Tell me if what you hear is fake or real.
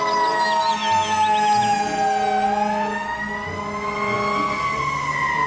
real